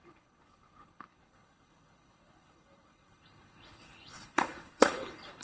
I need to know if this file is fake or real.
fake